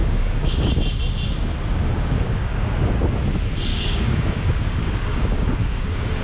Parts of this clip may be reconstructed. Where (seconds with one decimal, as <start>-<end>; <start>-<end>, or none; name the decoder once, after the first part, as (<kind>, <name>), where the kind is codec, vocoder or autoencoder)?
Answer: 0.0-0.7 (codec, DAC); 1.9-2.7; 3.7-6.2